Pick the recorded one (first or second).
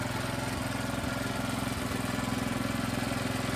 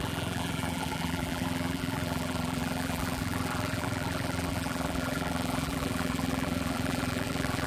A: first